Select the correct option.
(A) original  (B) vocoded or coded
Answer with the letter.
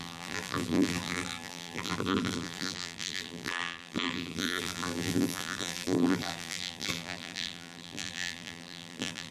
B